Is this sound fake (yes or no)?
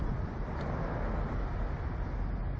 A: no